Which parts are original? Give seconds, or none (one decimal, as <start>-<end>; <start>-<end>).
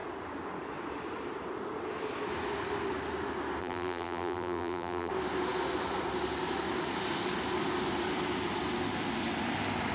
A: 0.0-3.6; 5.1-9.9